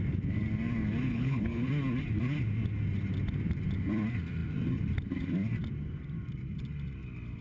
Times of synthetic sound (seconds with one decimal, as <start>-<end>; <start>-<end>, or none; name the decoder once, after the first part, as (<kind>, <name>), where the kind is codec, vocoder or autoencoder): 1.1-1.7 (codec, HILCodec)